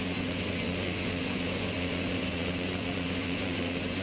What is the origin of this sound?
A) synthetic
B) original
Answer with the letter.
A